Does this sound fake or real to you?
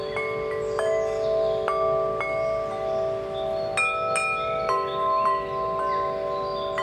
real